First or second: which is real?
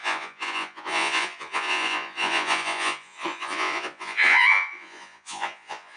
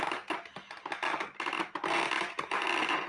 second